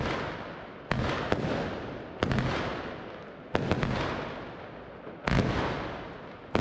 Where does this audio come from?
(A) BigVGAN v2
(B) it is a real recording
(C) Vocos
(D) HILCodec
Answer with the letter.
B